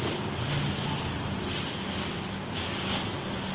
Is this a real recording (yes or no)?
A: yes